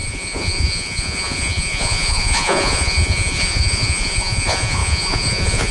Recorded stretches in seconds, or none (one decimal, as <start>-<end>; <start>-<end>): none